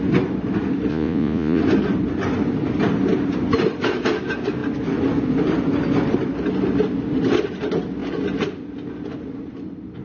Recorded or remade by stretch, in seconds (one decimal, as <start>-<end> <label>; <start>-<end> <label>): 0.0-0.9 recorded; 0.9-1.6 remade; 1.6-10.0 recorded